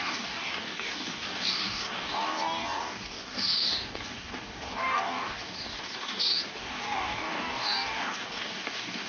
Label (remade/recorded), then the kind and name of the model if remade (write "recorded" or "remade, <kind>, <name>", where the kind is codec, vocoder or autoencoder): remade, codec, DAC